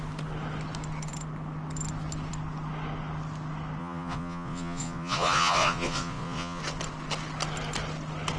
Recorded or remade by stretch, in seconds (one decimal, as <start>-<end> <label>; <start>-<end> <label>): 0.0-3.8 recorded; 3.8-6.6 remade; 6.6-8.4 recorded